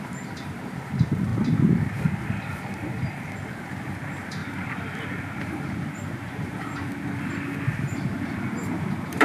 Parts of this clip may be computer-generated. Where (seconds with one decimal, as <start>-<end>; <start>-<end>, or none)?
0.0-1.3; 3.6-4.4; 5.4-6.9; 7.8-9.2

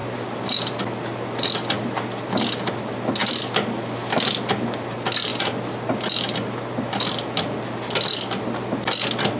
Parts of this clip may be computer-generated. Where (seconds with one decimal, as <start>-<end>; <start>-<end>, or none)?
none